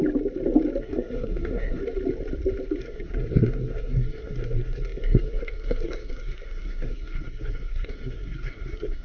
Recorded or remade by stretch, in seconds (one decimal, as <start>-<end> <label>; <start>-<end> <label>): 0.0-0.8 recorded; 0.8-1.8 remade; 1.8-2.8 recorded; 2.8-9.0 remade